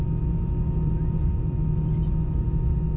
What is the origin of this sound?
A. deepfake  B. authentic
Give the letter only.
B